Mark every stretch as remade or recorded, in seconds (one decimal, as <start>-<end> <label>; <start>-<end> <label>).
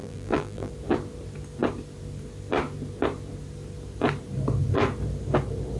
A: 0.0-0.7 remade; 0.7-5.8 recorded